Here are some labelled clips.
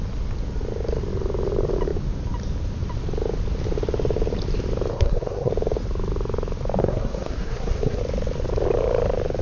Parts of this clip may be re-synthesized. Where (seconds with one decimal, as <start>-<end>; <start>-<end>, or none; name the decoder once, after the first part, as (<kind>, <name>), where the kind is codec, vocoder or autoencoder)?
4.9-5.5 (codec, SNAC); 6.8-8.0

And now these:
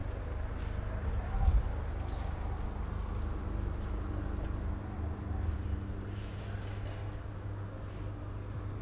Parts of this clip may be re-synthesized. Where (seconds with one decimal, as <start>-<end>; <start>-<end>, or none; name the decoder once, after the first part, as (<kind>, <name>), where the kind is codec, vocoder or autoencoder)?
none

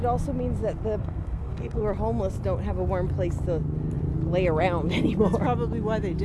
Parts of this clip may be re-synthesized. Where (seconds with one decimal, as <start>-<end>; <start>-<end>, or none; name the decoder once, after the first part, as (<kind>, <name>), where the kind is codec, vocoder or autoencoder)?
1.0-1.8 (codec, SNAC)

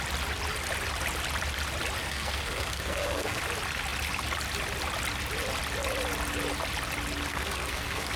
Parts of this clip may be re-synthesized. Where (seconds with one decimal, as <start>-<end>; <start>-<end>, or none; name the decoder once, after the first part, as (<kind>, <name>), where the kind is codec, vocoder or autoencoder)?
2.0-3.4 (codec, SNAC); 7.3-8.2

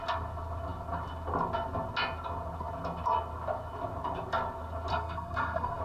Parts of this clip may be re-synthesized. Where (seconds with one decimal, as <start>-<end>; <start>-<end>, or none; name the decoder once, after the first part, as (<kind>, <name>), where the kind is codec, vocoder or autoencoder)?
4.9-5.8 (codec, SNAC)

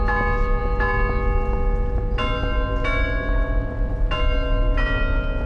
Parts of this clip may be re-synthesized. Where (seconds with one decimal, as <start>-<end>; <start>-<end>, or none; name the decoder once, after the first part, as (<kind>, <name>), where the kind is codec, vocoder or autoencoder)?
none